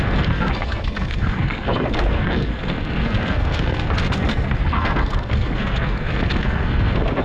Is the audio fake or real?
fake